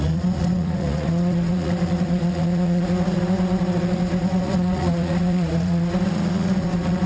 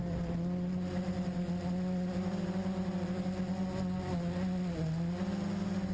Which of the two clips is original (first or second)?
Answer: second